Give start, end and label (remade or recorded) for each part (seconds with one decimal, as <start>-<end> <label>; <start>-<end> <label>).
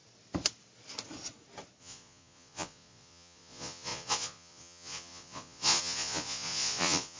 0.0-1.8 recorded; 1.8-7.2 remade